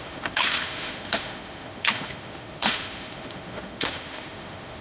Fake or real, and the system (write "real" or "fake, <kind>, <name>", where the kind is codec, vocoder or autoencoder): fake, autoencoder, DAC-VAE